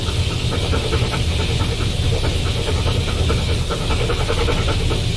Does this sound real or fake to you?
real